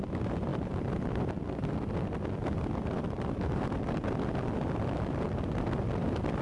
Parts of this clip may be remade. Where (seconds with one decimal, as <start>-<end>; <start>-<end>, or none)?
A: none